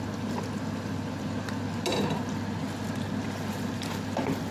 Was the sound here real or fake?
real